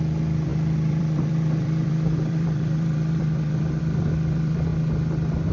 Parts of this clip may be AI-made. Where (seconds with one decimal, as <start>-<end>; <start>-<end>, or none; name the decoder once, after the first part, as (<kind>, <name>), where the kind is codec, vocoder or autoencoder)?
0.0-4.7 (vocoder, BigVGAN v2)